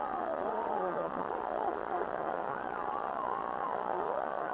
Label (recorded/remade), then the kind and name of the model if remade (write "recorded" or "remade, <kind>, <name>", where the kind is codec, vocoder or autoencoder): remade, vocoder, Vocos